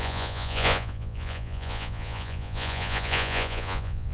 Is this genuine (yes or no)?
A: no